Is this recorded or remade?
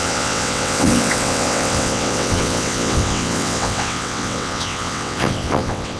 remade